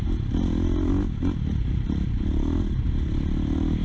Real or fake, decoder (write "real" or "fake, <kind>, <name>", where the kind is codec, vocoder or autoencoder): real